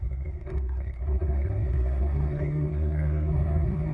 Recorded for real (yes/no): no